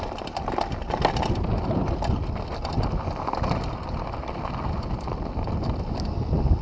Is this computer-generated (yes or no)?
no